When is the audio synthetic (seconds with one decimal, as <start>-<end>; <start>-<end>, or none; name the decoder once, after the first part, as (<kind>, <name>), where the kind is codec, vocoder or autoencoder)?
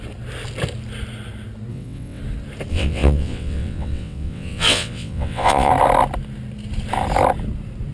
1.7-2.2 (vocoder, WaveNeXt); 2.7-5.7